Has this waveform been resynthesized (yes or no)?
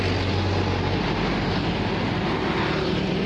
no